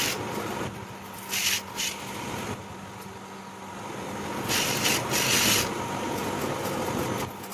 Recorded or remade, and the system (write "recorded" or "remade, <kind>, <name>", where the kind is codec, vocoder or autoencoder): recorded